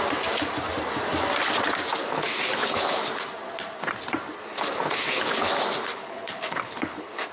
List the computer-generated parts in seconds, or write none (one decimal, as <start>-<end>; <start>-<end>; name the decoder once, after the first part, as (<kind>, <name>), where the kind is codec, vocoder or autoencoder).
2.0-3.1 (codec, HILCodec); 4.5-5.5; 5.9-7.3